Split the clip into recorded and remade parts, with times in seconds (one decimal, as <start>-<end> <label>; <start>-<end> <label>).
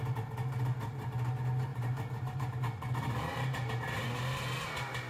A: 0.0-1.7 recorded; 1.7-4.0 remade; 4.0-5.1 recorded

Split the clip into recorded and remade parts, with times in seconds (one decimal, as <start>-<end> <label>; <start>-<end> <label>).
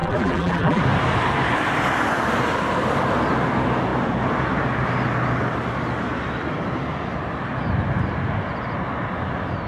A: 0.0-0.8 remade; 0.8-9.7 recorded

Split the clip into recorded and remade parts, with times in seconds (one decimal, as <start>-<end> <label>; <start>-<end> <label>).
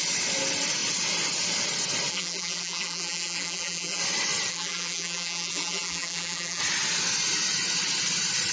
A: 0.0-2.1 recorded; 2.1-4.0 remade; 4.0-4.5 recorded; 4.5-6.6 remade; 6.6-8.5 recorded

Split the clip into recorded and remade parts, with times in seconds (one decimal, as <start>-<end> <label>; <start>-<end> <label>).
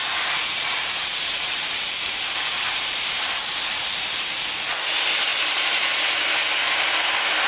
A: 0.0-4.5 remade; 4.5-5.3 recorded; 5.3-5.9 remade; 5.9-7.5 recorded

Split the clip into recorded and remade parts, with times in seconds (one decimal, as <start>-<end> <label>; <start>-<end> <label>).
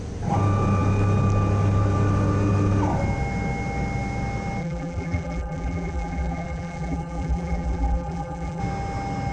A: 0.0-4.6 recorded; 4.6-8.6 remade; 8.6-9.3 recorded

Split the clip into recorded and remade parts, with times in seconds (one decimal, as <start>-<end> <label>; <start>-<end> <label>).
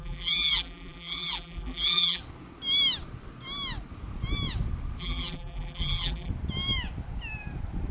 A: 0.0-2.2 remade; 2.2-5.0 recorded; 5.0-6.3 remade; 6.3-7.9 recorded